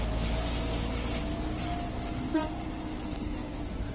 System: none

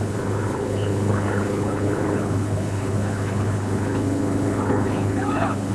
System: codec, HILCodec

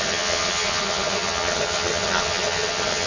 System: vocoder, HiFi-GAN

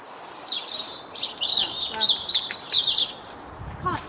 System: vocoder, BigVGAN v2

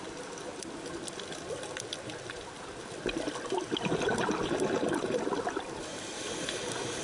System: none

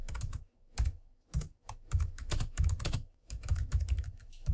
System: autoencoder, DAC-VAE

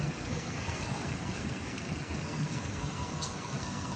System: codec, SNAC